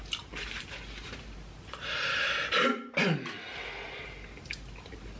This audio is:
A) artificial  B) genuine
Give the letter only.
A